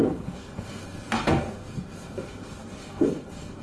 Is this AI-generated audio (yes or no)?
yes